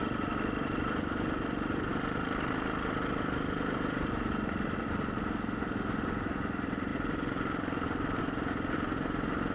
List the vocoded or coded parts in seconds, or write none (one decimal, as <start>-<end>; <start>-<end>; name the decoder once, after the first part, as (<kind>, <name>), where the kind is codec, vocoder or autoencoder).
none